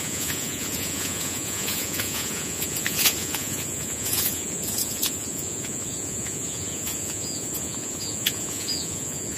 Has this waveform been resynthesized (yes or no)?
yes